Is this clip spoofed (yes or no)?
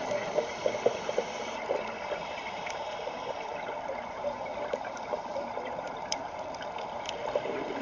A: yes